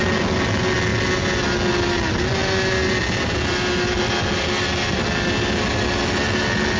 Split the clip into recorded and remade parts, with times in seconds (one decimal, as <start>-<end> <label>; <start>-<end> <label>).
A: 0.0-6.8 recorded